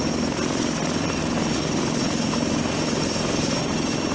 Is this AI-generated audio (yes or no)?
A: no